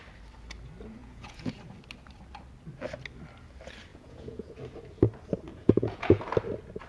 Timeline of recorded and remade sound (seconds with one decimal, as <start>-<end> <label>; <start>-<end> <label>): 0.0-1.0 recorded; 1.0-1.5 remade; 1.5-3.9 recorded; 3.9-4.5 remade; 4.5-5.5 recorded; 5.5-6.2 remade; 6.2-6.9 recorded